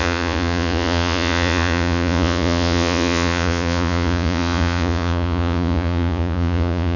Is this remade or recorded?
remade